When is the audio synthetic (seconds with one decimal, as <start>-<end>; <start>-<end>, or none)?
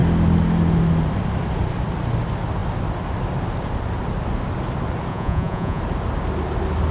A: 5.1-5.8